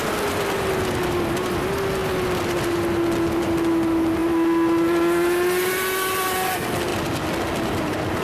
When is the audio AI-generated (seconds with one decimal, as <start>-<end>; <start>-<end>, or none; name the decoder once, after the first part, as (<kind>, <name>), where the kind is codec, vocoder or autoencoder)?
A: none